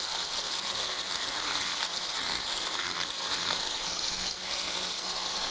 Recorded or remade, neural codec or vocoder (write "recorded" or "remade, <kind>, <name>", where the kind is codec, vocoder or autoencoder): remade, codec, SNAC